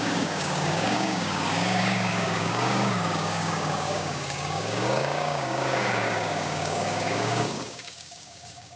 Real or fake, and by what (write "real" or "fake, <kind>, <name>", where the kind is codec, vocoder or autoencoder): fake, codec, DAC